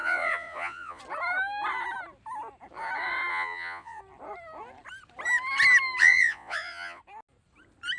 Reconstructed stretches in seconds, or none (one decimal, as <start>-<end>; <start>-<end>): 0.0-1.0; 3.3-4.0; 6.0-7.0

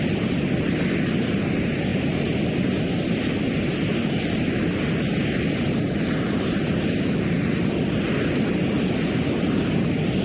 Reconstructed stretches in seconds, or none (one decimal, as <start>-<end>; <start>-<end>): none

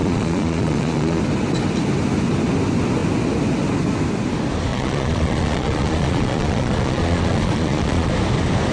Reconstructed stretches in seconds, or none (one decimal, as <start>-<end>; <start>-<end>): 0.0-1.2; 4.7-8.1

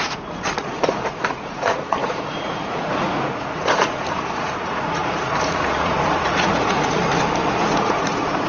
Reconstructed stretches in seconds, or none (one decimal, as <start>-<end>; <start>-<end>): 0.0-7.0; 7.7-8.5

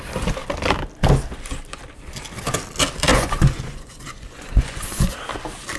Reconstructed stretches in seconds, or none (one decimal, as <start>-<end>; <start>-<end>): 3.1-5.1

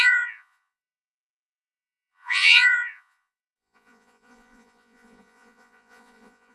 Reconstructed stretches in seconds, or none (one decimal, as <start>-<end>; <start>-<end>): 0.0-6.5

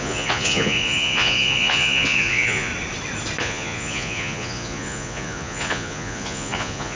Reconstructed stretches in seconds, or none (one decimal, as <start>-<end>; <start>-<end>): 0.0-2.7; 3.4-7.0